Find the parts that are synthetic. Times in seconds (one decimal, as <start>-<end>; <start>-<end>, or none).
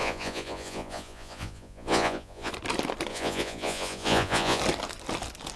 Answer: 0.0-2.5; 3.1-4.6